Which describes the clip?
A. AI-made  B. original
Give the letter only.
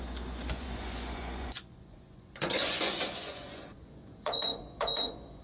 A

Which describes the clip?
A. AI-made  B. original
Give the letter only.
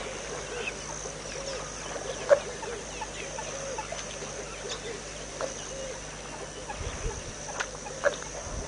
B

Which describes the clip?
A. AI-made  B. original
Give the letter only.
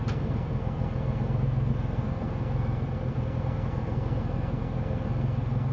A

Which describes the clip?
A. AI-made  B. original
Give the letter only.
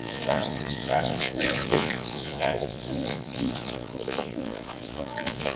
A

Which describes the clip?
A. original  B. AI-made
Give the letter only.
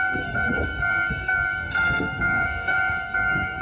B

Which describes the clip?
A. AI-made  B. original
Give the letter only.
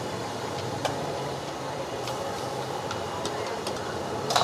A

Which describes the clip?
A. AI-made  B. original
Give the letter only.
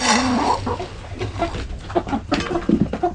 B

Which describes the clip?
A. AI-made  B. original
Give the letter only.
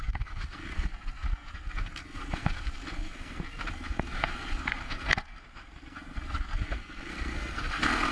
A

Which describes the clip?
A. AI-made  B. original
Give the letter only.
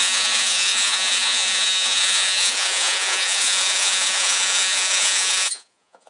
A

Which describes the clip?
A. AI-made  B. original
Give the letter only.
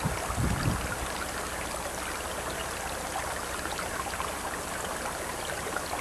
B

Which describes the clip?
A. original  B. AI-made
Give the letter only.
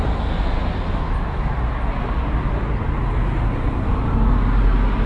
A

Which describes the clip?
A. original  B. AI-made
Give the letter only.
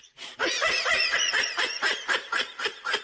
B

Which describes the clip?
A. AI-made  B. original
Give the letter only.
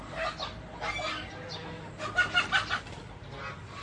B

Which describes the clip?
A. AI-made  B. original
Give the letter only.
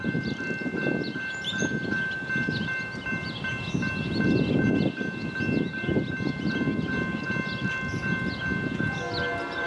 B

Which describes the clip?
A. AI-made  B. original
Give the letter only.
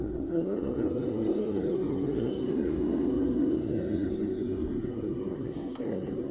A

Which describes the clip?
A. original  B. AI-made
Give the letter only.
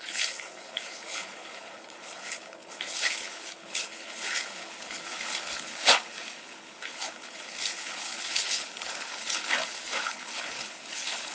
B